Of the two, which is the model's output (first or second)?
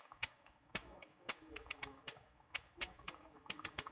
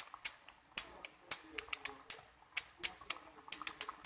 first